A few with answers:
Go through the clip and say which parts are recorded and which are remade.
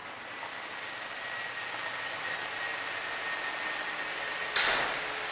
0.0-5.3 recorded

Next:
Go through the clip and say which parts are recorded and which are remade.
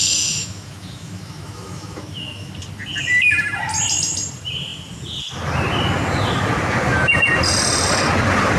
0.0-2.5 remade; 2.5-8.6 recorded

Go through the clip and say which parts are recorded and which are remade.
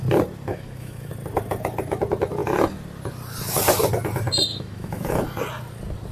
0.0-0.5 recorded; 0.5-1.1 remade; 1.1-4.5 recorded; 4.5-5.1 remade; 5.1-6.1 recorded